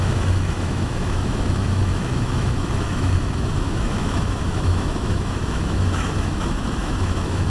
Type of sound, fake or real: fake